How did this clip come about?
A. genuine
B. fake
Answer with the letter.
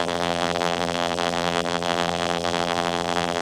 B